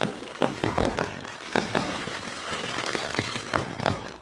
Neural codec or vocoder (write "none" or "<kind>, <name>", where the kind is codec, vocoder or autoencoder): codec, SNAC